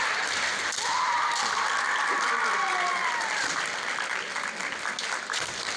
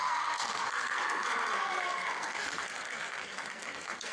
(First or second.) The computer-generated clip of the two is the second